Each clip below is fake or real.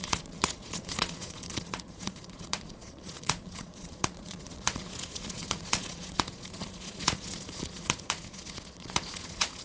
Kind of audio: fake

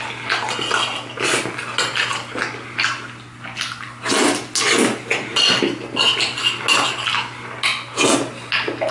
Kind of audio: real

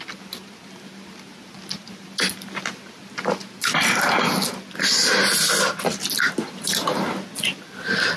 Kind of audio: real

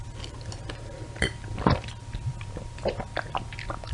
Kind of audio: real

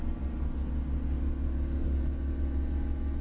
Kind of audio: real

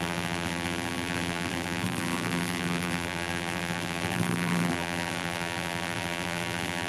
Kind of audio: fake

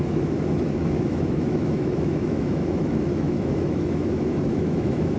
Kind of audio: fake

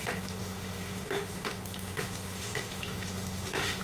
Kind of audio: fake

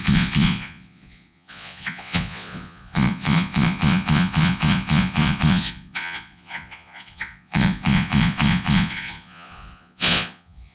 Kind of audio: fake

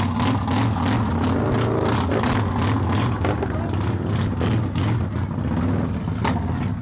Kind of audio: real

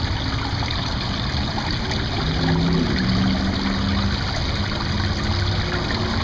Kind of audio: real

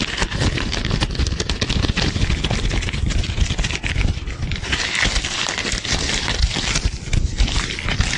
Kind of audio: real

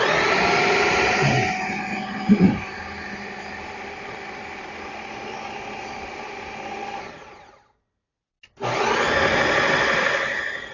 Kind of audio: real